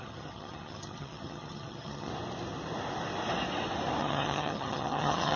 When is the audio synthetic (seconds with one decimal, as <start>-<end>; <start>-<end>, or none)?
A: 0.0-2.1; 4.0-5.4